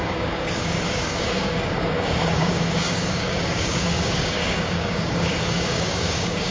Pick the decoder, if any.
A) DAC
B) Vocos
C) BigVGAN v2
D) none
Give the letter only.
A